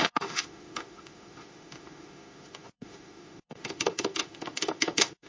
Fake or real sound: fake